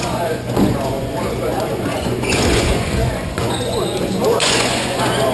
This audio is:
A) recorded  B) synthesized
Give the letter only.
B